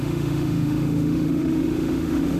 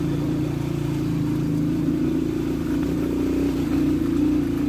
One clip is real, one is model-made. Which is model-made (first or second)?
first